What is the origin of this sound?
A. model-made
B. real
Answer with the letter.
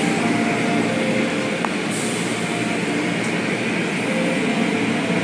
B